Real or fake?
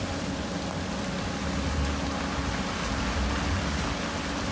real